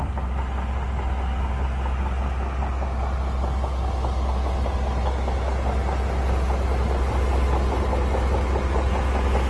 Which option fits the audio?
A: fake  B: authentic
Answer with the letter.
B